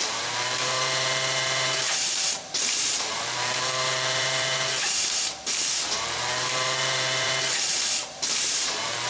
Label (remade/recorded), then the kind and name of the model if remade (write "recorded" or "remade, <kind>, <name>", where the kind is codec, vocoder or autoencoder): remade, vocoder, BigVGAN v2